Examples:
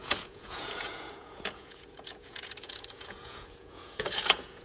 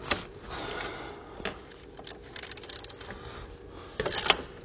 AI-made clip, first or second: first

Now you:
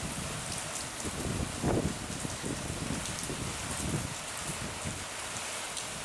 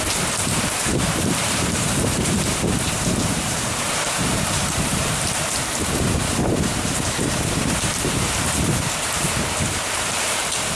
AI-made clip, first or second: second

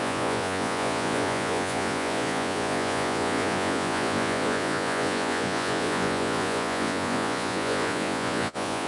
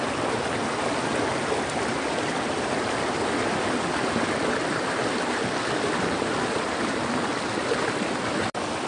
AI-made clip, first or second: first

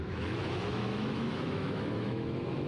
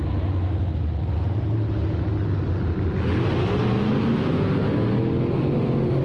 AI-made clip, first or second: first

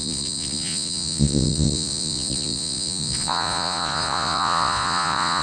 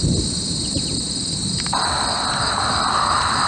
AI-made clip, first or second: first